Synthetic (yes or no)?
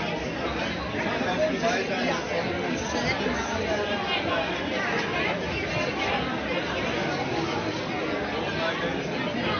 no